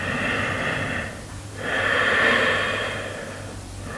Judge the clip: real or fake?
real